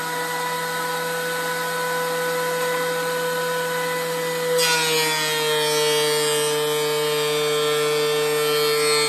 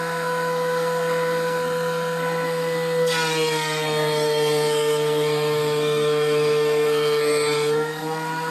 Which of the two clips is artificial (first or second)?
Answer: second